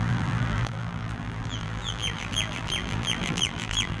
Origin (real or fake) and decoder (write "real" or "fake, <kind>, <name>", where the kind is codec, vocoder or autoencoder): fake, vocoder, BigVGAN v2